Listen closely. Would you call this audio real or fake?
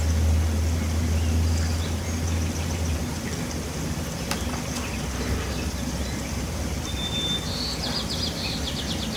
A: real